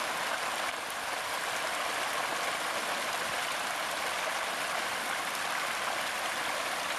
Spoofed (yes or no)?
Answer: yes